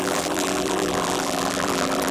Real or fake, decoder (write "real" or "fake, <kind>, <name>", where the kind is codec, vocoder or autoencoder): fake, vocoder, BigVGAN v2